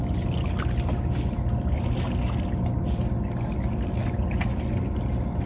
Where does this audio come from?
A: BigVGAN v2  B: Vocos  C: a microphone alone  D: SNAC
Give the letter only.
C